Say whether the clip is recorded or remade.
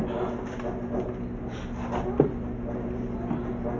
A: recorded